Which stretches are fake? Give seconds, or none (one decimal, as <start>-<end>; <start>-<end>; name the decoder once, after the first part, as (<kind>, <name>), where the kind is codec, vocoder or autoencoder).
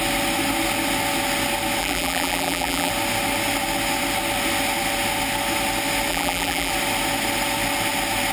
1.8-2.9 (vocoder, BigVGAN v2); 6.1-6.7